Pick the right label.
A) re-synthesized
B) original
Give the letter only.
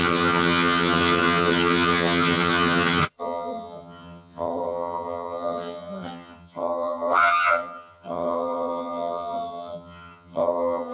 A